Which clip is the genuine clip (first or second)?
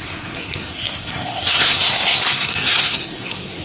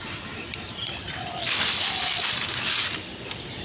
second